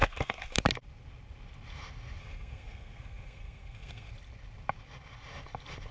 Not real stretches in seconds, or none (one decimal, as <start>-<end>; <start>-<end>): 0.0-0.6; 2.2-4.1